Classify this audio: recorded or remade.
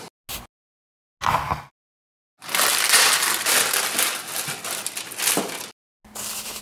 recorded